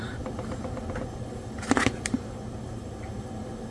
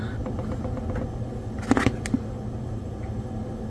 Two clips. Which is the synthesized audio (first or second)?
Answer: first